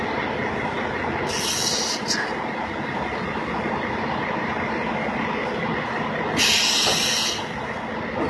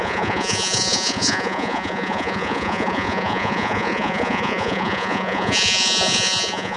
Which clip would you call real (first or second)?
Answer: first